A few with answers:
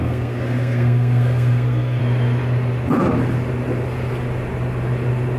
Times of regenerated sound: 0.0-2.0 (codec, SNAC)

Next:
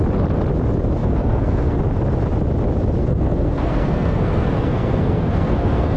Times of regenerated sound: 1.0-1.8 (codec, SNAC); 3.0-6.0

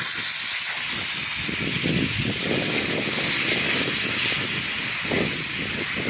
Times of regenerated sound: none

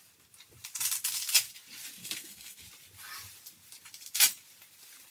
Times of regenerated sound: 2.0-2.6 (codec, SNAC)

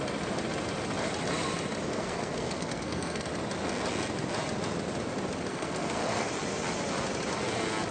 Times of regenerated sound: 1.9-3.3 (codec, SNAC); 5.5-6.3

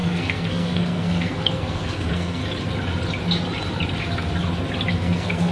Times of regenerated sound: 0.0-2.4 (codec, SNAC); 4.9-5.5

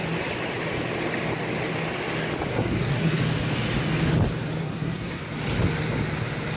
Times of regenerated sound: 2.5-3.2 (codec, SNAC); 4.6-5.2

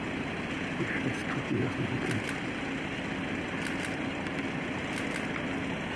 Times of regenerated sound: none